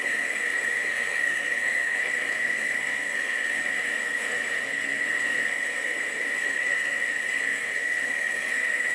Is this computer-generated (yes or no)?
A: yes